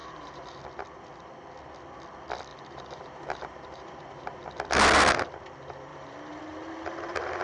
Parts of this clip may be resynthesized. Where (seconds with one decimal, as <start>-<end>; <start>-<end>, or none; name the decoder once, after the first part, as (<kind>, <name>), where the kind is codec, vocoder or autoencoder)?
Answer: 0.0-0.6 (vocoder, BigVGAN v2); 2.5-4.4; 5.9-6.4